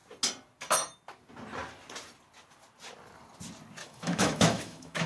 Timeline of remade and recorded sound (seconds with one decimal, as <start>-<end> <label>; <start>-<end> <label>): 0.0-3.8 recorded; 3.8-5.1 remade